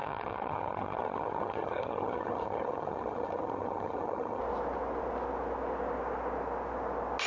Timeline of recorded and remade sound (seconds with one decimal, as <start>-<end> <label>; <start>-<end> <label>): 0.0-4.4 remade; 4.4-7.3 recorded